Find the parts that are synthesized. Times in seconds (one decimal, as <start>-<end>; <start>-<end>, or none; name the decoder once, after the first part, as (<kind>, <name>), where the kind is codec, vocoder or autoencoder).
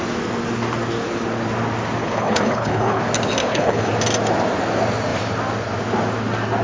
2.0-3.0 (codec, HILCodec); 3.4-3.9